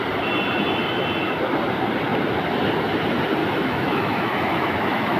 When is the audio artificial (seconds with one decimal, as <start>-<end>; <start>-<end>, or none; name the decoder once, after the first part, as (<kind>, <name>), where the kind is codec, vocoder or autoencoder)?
3.4-5.2 (autoencoder, DAC-VAE)